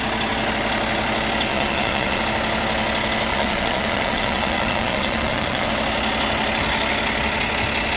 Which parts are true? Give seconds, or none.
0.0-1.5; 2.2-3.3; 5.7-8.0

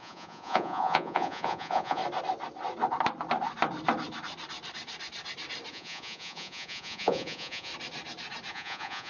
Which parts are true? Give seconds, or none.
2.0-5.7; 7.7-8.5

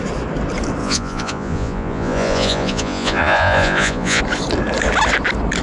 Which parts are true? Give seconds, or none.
0.0-0.8; 4.2-5.6

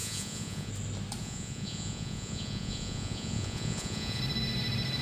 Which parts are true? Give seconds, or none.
0.7-1.2; 4.2-5.0

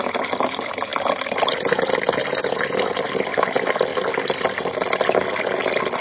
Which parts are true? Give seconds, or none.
0.0-6.0